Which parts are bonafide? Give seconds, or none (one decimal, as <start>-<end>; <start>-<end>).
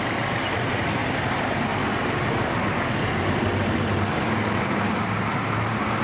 0.0-6.0